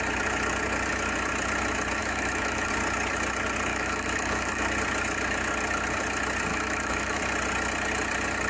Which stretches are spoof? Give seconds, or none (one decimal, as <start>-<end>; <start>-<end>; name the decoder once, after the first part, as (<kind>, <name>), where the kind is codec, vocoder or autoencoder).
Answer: 2.0-2.7 (autoencoder, DAC-VAE); 3.7-4.7; 6.5-7.2